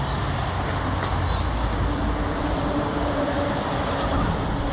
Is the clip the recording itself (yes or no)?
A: yes